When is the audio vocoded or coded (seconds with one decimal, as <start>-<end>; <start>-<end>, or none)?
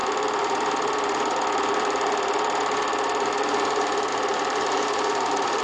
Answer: 4.1-5.6